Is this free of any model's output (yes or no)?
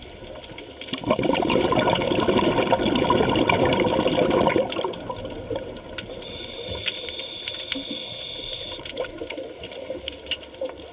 yes